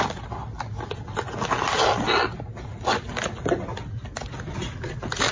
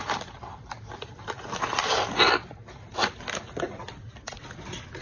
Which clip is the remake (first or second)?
second